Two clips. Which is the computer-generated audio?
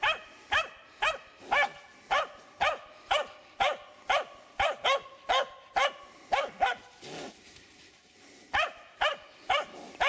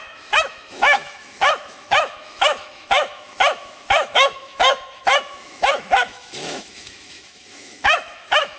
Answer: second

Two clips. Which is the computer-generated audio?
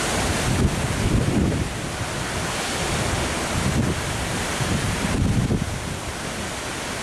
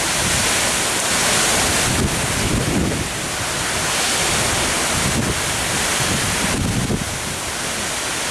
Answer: first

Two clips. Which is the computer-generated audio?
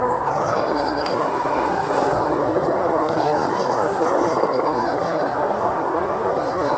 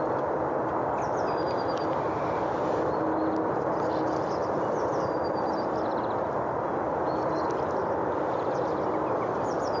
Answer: first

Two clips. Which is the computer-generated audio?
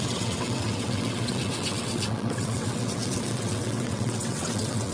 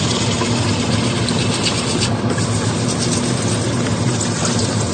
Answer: first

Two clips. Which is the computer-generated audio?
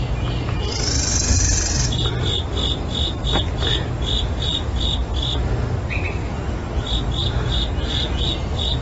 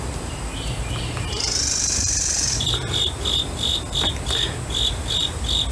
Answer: second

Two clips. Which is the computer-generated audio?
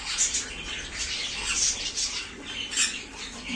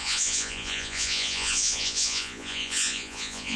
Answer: second